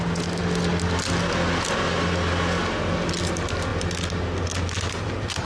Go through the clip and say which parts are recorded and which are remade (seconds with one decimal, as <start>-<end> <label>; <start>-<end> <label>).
0.0-5.4 recorded